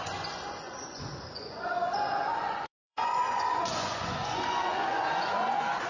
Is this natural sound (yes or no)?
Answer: no